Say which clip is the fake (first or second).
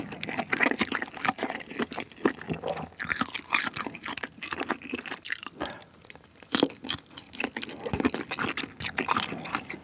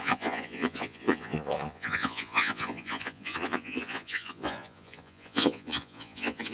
second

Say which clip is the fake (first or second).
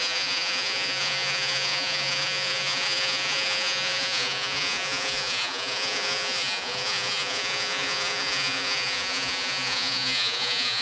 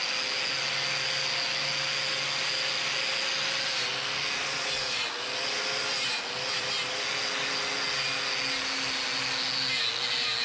first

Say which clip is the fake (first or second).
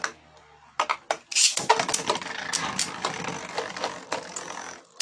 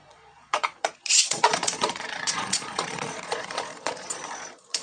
second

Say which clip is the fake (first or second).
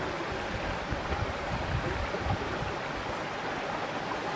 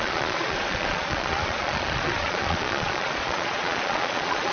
second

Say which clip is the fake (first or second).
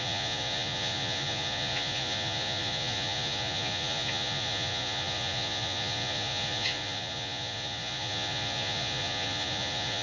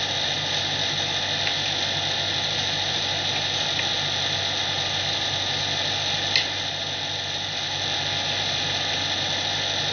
first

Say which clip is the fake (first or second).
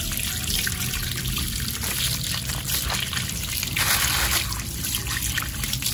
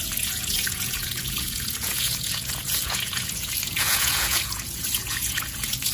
second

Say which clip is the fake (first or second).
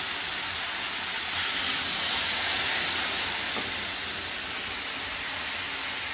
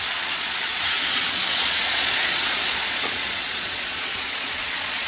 second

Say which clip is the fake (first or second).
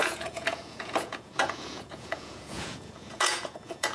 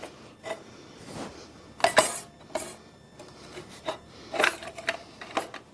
first